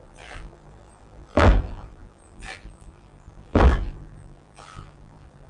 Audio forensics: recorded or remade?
remade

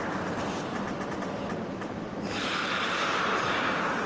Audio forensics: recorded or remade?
recorded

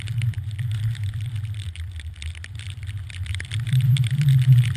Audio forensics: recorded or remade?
remade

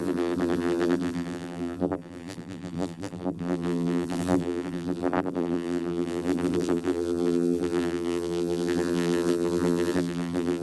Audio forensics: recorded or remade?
remade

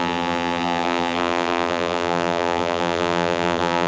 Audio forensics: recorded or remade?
remade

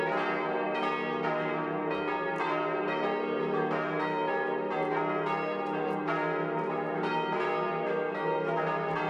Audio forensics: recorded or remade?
recorded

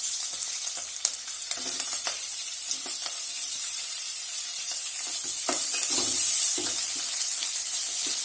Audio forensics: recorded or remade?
recorded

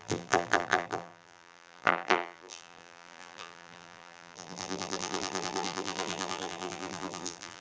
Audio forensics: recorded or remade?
remade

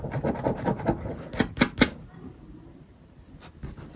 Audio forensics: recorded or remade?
recorded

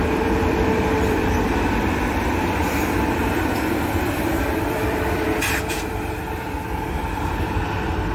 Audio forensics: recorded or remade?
remade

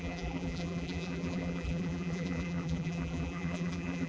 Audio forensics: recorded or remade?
remade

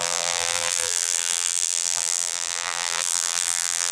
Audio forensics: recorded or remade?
remade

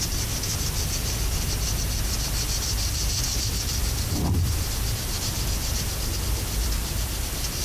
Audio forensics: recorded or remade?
remade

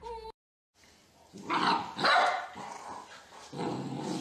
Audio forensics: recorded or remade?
remade